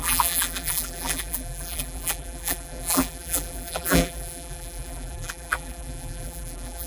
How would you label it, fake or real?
fake